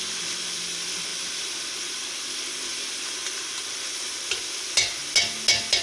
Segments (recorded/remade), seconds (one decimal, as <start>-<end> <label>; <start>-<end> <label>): 0.0-1.1 recorded; 1.1-4.2 remade; 4.2-5.8 recorded